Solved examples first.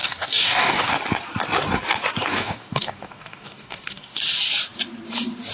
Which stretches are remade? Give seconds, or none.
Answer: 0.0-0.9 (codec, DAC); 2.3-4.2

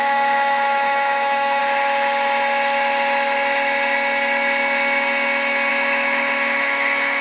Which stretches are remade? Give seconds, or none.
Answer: 0.0-1.6 (autoencoder, DAC-VAE); 5.7-7.2

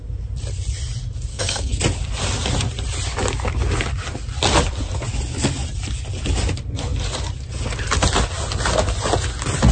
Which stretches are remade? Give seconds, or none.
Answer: 1.3-1.8 (codec, SNAC)

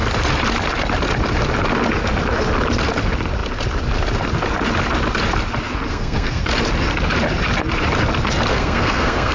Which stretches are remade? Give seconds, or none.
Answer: 5.9-6.4 (codec, SNAC); 8.5-9.3